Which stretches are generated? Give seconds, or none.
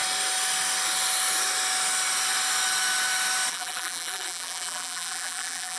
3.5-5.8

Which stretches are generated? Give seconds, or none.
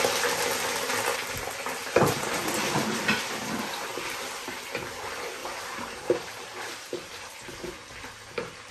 1.8-3.0; 5.4-7.4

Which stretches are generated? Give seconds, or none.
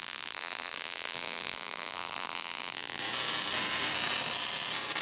0.0-3.0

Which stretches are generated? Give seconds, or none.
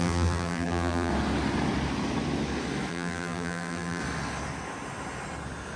0.0-1.1; 2.9-4.0